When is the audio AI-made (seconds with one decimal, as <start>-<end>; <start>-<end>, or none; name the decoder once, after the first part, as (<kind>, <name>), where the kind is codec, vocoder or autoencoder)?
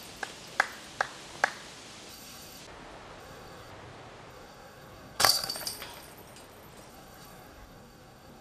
2.1-2.6 (codec, SNAC); 3.2-3.7; 4.3-5.5; 6.9-8.4